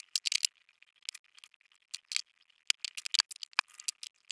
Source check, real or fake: real